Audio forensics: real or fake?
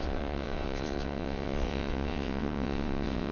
fake